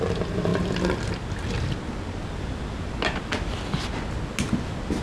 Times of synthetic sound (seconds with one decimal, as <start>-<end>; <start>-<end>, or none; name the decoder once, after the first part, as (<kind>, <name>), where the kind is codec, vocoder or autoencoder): none

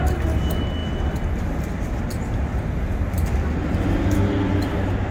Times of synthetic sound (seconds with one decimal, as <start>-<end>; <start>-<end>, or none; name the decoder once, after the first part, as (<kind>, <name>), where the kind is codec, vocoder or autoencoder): none